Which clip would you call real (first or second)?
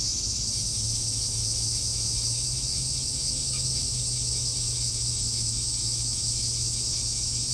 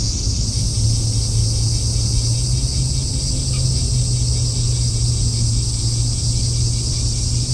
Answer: second